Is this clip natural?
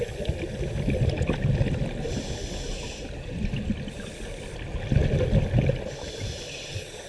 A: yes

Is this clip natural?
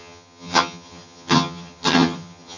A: no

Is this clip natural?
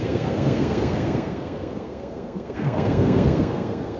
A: no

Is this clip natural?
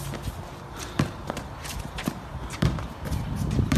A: yes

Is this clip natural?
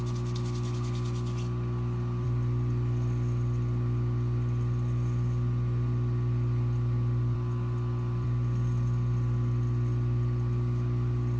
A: yes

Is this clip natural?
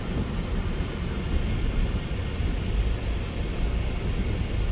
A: yes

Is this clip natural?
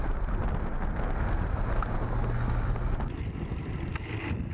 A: yes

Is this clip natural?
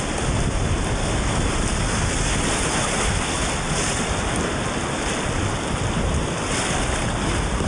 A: yes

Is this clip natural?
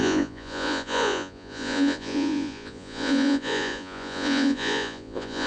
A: no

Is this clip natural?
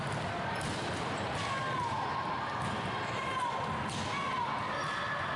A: yes